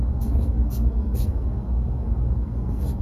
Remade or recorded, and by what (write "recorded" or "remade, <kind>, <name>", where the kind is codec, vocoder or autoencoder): remade, codec, SNAC